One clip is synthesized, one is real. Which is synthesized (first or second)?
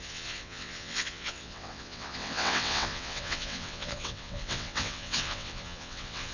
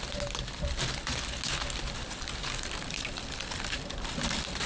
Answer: first